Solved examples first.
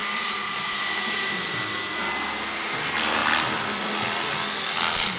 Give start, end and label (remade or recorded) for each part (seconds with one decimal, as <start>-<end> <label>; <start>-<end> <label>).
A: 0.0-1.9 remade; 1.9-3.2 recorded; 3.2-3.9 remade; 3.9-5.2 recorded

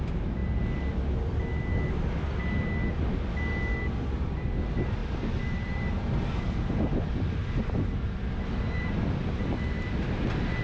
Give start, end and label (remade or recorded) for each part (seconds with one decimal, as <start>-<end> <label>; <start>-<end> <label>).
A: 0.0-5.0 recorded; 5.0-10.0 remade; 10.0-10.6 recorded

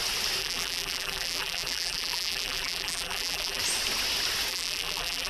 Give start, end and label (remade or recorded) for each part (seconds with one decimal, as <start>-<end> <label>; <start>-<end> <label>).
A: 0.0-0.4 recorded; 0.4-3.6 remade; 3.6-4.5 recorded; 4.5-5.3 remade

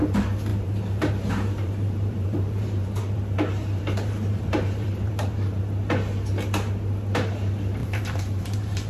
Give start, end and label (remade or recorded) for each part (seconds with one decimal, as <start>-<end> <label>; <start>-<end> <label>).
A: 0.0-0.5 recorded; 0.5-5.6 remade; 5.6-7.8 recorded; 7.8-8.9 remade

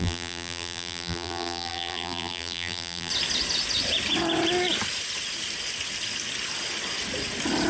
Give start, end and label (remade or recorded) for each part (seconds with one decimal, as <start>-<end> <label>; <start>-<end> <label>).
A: 0.0-3.1 remade; 3.1-7.7 recorded